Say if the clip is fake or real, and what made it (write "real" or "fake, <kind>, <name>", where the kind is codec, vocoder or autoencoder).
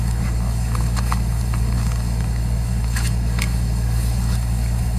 fake, codec, DAC